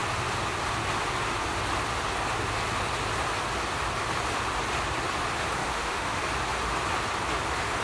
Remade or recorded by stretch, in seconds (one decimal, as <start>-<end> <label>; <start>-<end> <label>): 0.0-5.6 recorded; 5.6-6.2 remade; 6.2-7.8 recorded